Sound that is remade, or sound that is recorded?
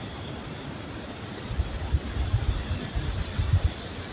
recorded